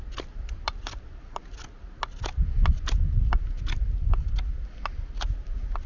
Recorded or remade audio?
recorded